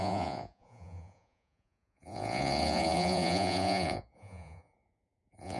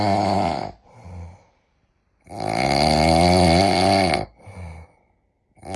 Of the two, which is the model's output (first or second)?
first